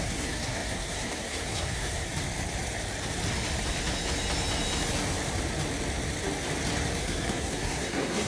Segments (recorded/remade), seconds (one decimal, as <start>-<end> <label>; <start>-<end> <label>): 0.0-2.1 remade; 2.1-7.0 recorded; 7.0-8.3 remade